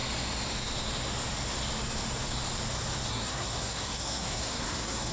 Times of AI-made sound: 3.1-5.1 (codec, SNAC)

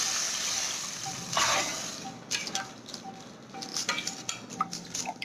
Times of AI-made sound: none

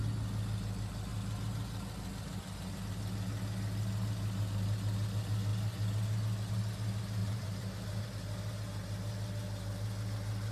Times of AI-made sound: 7.2-8.0 (vocoder, BigVGAN v2)